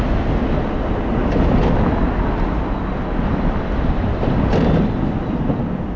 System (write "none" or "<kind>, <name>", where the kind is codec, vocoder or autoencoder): none